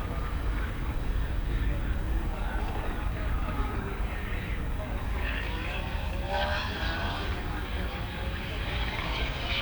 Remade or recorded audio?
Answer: remade